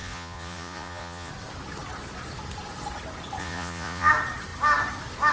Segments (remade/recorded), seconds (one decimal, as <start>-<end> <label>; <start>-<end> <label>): 0.0-1.3 remade; 1.3-3.4 recorded; 3.4-4.1 remade; 4.1-5.3 recorded